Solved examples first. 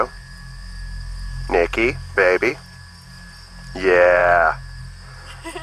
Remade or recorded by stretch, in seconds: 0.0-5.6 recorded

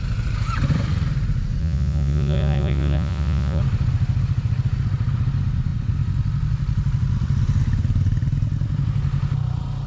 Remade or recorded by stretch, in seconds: 0.0-1.6 recorded; 1.6-3.6 remade; 3.6-9.9 recorded

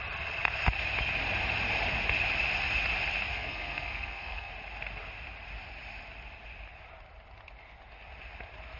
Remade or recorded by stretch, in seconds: 0.0-3.3 recorded; 3.3-4.5 remade; 4.5-8.8 recorded

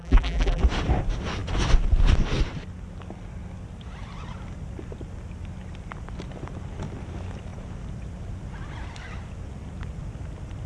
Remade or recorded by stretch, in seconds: 0.0-0.6 remade; 0.6-10.7 recorded